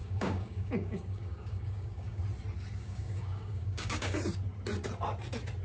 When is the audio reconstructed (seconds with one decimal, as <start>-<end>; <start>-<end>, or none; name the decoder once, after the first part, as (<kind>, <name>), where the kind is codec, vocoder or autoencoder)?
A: 0.0-2.2 (codec, DAC); 2.8-4.3